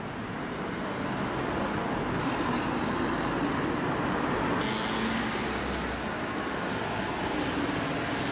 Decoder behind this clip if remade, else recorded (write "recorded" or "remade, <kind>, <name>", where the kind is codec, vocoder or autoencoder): recorded